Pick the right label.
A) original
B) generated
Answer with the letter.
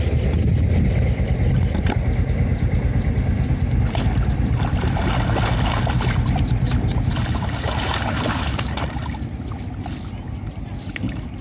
A